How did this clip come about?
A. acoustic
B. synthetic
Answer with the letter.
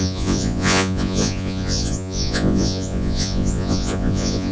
B